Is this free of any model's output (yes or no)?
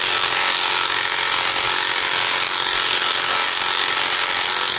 no